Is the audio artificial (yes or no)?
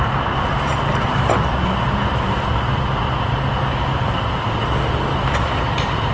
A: no